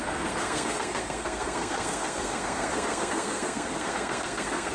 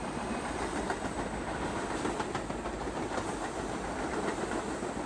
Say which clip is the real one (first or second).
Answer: second